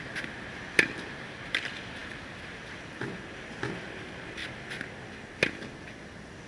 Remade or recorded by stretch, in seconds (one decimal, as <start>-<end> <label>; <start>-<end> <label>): 0.0-6.5 recorded